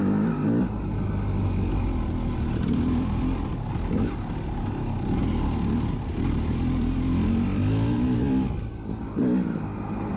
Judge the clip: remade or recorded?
recorded